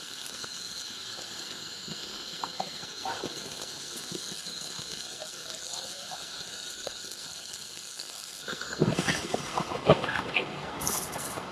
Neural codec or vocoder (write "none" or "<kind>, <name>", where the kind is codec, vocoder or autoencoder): codec, SNAC